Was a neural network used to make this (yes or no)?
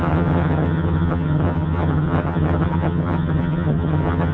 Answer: yes